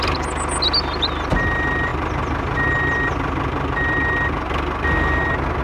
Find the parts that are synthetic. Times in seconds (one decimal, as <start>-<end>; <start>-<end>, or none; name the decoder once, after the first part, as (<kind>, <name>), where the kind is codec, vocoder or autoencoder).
none